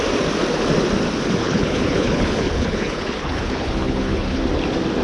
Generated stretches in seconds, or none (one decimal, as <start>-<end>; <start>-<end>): 1.4-4.4